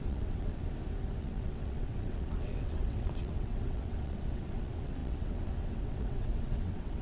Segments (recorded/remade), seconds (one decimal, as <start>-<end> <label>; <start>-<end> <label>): 0.0-0.6 remade; 0.6-1.2 recorded; 1.2-7.0 remade